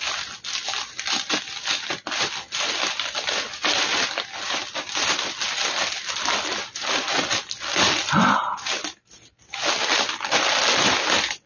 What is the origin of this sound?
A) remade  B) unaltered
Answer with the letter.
B